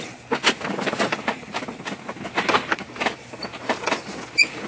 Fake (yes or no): no